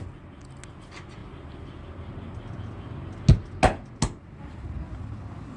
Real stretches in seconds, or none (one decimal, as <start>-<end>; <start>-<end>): 0.0-5.6